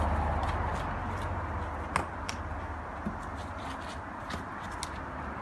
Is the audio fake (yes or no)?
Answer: no